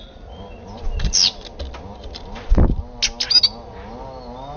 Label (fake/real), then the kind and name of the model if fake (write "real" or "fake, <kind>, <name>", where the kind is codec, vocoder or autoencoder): real